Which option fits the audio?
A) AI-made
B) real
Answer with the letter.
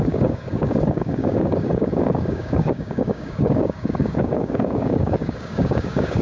A